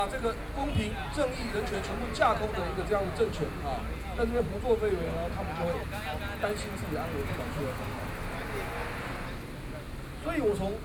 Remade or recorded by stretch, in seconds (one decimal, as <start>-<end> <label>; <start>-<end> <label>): 0.0-7.2 recorded; 7.2-7.8 remade; 7.8-10.8 recorded